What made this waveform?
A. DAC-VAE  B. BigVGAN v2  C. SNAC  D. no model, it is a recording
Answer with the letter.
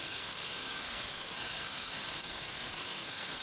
C